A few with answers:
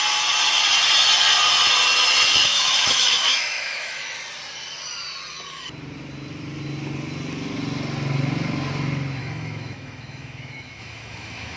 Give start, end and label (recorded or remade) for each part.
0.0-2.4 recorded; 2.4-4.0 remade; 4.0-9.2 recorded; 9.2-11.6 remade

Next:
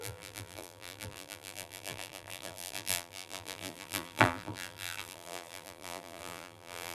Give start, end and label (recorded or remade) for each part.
0.0-6.9 remade

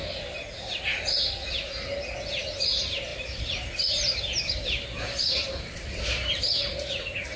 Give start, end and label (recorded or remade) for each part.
0.0-3.1 recorded; 3.1-6.9 remade; 6.9-7.4 recorded